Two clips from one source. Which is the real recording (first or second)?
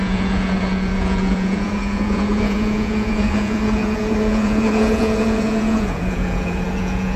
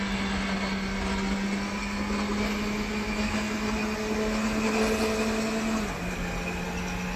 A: second